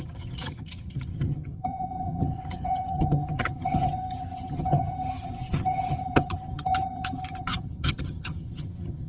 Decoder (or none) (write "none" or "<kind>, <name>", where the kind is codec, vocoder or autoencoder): vocoder, HiFi-GAN